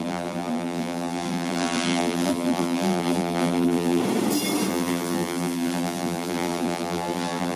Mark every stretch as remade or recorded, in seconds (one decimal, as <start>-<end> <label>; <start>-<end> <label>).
0.0-4.0 remade; 4.0-4.7 recorded; 4.7-7.6 remade